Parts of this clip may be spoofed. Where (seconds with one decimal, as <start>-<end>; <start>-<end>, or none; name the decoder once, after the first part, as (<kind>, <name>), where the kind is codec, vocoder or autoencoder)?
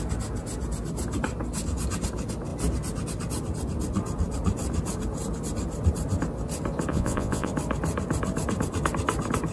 6.9-7.5 (vocoder, Vocos)